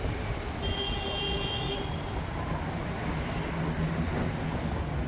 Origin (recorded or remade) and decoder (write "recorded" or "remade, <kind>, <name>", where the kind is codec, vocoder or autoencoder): recorded